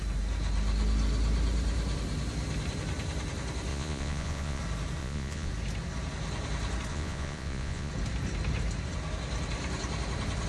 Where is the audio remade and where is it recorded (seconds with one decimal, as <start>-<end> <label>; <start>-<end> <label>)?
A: 0.0-3.7 recorded; 3.7-4.6 remade; 4.6-5.0 recorded; 5.0-5.5 remade; 5.5-6.9 recorded; 6.9-7.9 remade; 7.9-10.5 recorded